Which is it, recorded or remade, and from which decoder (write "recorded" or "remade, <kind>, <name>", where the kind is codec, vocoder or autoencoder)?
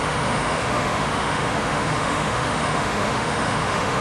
remade, autoencoder, DAC-VAE